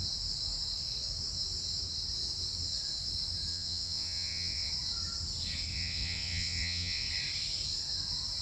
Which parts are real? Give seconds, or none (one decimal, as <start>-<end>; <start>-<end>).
0.0-3.5; 4.7-5.7; 7.1-8.4